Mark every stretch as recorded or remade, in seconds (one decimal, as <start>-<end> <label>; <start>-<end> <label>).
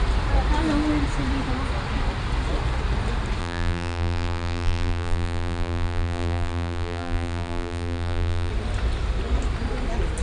0.0-3.4 recorded; 3.4-8.5 remade; 8.5-10.2 recorded